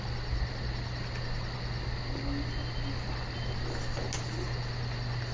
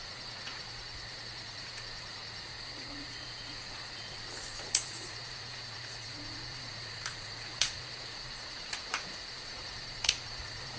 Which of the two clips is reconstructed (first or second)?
second